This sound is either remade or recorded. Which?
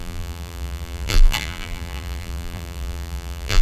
remade